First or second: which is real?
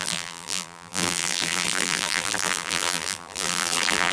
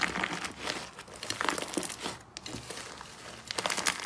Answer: second